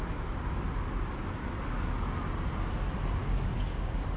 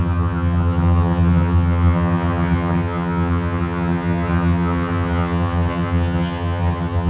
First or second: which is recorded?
first